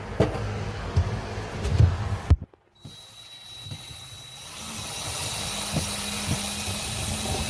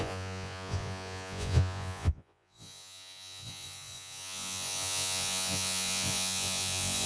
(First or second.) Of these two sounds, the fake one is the second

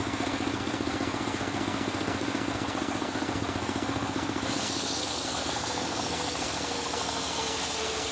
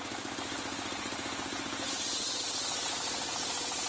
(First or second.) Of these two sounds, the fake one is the first